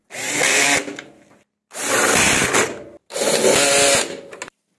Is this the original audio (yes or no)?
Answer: yes